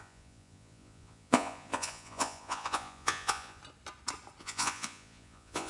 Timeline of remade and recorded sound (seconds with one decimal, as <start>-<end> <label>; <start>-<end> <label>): 0.0-3.6 remade; 3.6-4.4 recorded; 4.4-5.7 remade

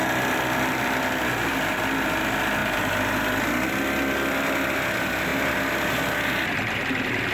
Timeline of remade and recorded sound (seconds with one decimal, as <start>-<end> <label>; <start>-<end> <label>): 0.0-7.3 recorded